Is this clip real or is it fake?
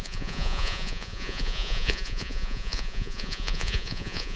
fake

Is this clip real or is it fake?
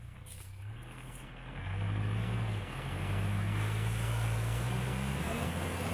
fake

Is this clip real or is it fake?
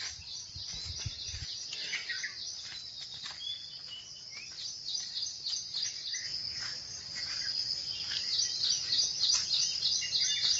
real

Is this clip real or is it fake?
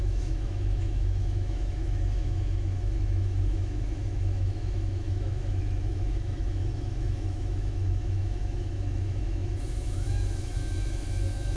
fake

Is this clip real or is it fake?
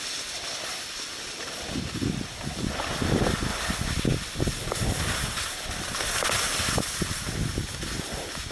real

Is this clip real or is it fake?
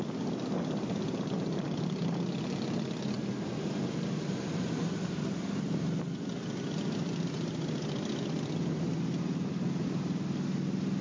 real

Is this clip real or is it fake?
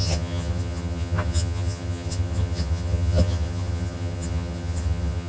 fake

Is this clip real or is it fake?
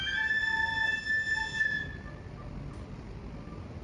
real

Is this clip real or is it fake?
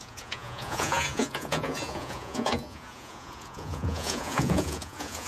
fake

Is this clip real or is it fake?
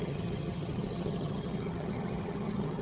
fake